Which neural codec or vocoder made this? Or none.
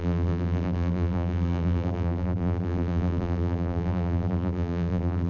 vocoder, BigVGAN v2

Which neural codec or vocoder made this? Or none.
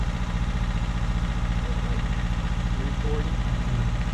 vocoder, BigVGAN v2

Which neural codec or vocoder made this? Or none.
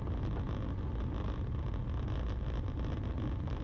none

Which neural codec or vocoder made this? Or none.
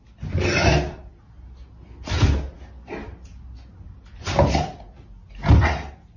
none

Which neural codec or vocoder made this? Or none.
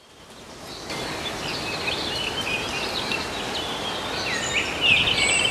none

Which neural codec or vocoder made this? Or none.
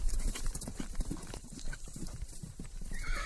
vocoder, BigVGAN v2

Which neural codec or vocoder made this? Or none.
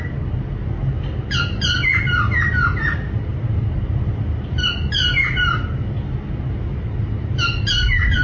none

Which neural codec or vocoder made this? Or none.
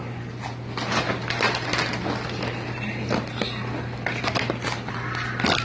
none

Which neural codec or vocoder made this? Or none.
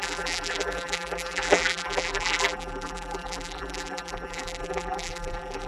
vocoder, BigVGAN v2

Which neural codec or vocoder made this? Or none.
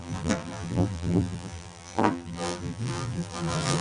vocoder, BigVGAN v2